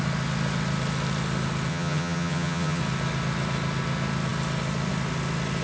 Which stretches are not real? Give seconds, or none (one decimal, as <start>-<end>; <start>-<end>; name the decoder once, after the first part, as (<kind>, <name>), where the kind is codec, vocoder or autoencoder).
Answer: 1.7-2.8 (vocoder, HiFi-GAN)